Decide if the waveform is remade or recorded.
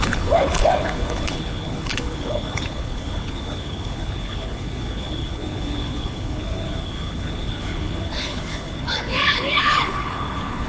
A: remade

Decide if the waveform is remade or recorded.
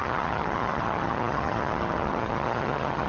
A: remade